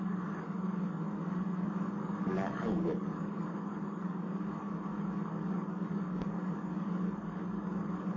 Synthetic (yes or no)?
yes